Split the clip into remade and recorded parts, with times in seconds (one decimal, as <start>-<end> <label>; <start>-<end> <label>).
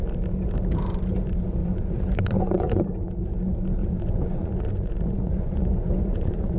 0.0-1.6 recorded; 1.6-2.9 remade; 2.9-3.8 recorded; 3.8-6.6 remade